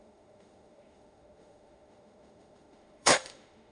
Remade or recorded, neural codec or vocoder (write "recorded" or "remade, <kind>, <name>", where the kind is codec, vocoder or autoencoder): remade, autoencoder, DAC-VAE